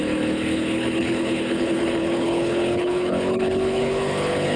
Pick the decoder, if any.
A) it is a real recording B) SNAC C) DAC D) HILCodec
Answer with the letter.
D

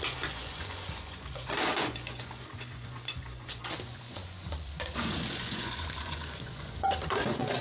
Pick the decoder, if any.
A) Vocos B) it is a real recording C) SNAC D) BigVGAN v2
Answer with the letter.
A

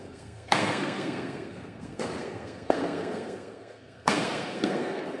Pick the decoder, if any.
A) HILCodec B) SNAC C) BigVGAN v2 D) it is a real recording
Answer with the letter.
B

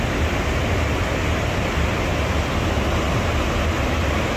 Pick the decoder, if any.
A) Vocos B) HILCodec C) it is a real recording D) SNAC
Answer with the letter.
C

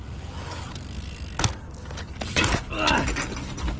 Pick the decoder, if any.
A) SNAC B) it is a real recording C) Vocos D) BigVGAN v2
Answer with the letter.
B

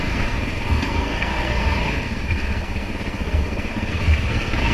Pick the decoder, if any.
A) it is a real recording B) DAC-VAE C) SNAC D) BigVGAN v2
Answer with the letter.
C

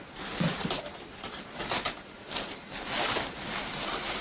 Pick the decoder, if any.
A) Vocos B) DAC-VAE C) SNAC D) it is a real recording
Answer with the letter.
D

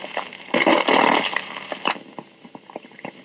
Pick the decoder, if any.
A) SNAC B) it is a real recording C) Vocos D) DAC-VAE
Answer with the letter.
B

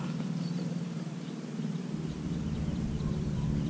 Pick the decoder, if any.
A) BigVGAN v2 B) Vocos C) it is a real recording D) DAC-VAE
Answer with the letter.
A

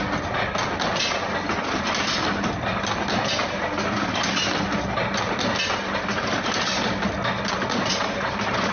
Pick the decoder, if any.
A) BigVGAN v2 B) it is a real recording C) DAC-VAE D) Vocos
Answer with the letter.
B